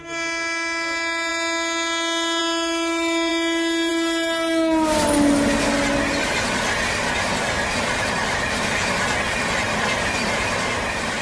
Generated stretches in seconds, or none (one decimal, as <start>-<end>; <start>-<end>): none